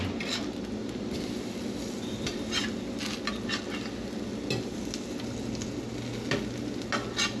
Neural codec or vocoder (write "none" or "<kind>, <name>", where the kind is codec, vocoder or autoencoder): none